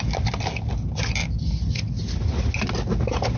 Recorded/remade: recorded